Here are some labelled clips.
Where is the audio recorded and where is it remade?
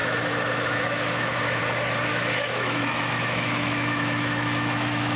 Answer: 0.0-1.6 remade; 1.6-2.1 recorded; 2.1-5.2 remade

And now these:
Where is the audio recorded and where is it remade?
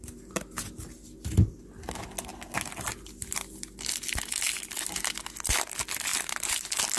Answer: 0.0-7.0 recorded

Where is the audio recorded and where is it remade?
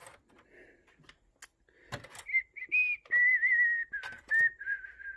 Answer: 0.0-5.2 recorded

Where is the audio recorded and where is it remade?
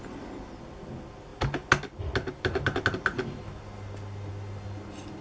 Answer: 0.0-5.2 recorded